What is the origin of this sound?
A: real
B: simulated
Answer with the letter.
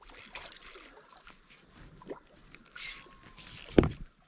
A